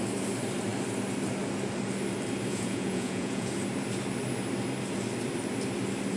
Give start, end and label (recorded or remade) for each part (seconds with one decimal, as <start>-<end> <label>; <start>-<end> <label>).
0.0-2.5 recorded; 2.5-3.5 remade; 3.5-6.2 recorded